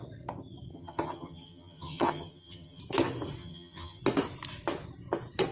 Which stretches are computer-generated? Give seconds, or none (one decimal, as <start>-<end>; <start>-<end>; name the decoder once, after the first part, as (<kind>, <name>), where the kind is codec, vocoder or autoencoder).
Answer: 0.7-2.8 (vocoder, HiFi-GAN); 3.4-4.0